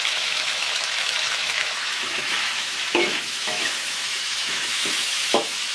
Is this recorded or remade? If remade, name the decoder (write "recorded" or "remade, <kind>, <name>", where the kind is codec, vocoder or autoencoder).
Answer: remade, autoencoder, DAC-VAE